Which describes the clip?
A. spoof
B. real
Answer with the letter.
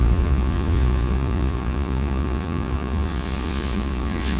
A